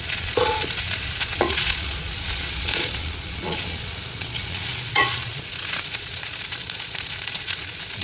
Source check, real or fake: fake